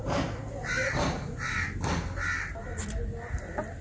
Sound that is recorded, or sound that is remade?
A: recorded